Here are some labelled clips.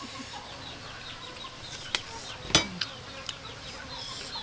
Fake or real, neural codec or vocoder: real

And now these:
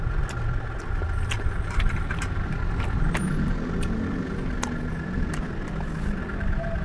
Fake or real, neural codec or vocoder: real